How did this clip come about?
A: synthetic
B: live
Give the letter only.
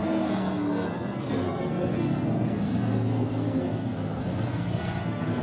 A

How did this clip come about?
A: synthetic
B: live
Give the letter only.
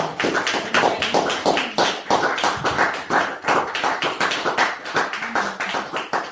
B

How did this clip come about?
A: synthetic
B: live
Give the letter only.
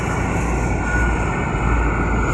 B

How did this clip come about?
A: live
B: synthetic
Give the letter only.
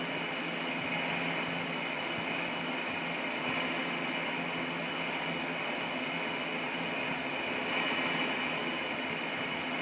A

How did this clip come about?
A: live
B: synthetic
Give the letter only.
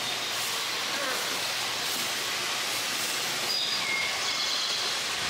A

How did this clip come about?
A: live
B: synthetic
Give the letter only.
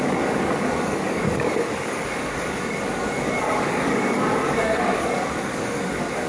B